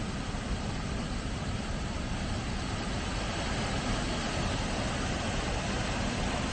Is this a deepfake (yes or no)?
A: no